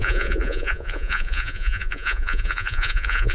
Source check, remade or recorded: remade